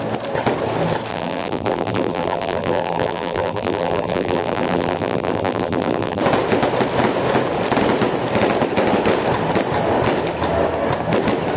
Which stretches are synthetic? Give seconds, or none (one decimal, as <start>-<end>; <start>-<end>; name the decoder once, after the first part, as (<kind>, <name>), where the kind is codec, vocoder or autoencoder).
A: 1.1-6.2 (vocoder, BigVGAN v2)